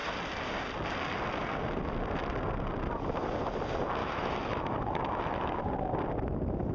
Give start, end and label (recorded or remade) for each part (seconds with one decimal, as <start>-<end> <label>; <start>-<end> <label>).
0.0-4.0 recorded; 4.0-5.6 remade; 5.6-6.7 recorded